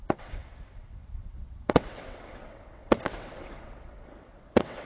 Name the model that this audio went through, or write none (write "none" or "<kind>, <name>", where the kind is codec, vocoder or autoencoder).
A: vocoder, WaveNeXt